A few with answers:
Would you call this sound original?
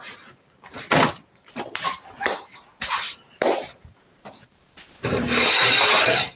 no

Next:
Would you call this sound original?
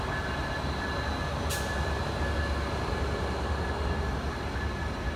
yes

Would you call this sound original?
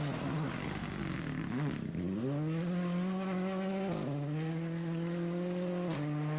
yes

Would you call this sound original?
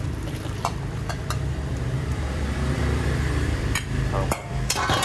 no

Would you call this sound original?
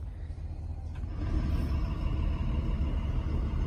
yes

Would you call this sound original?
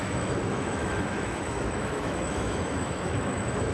no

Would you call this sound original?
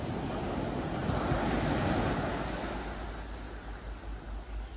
yes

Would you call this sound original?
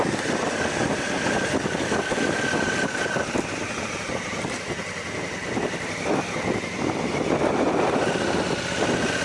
yes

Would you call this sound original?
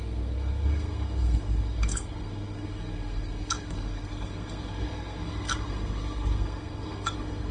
no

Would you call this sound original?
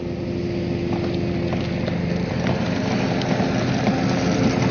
yes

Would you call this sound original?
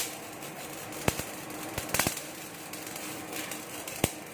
no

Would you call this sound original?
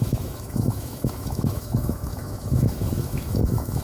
no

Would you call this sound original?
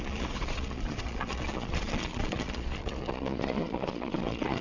no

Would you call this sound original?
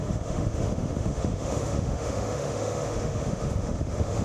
no